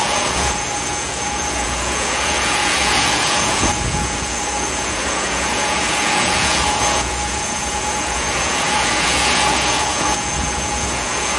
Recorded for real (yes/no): no